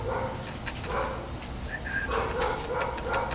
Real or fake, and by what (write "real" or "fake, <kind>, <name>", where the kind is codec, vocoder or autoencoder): real